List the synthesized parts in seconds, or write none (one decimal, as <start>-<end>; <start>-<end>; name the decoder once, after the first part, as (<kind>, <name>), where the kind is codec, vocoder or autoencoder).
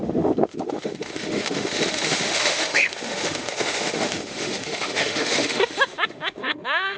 0.0-7.0 (autoencoder, DAC-VAE)